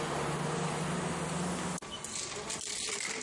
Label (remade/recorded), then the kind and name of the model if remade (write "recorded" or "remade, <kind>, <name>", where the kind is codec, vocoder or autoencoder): recorded